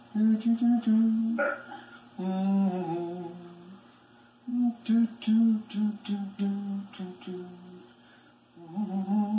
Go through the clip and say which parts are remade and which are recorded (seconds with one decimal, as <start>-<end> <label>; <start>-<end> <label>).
0.0-1.2 recorded; 1.2-1.9 remade; 1.9-9.4 recorded